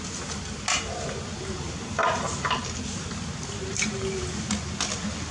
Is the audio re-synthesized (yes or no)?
no